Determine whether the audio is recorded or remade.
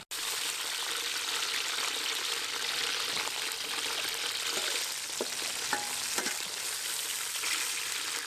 recorded